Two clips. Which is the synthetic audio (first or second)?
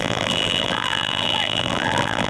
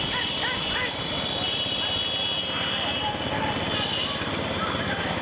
first